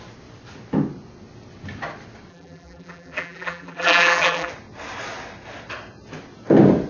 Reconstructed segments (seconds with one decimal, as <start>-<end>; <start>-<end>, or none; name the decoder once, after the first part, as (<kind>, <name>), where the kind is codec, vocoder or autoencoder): 2.3-4.5 (vocoder, BigVGAN v2)